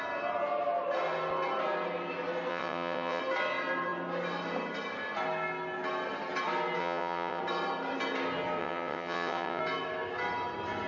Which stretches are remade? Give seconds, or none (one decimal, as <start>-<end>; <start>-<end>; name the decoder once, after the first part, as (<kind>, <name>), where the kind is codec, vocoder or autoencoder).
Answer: 2.5-3.2 (vocoder, WaveNeXt); 6.8-7.4; 8.6-9.6